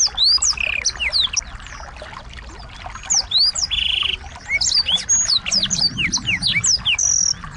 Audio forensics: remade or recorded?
recorded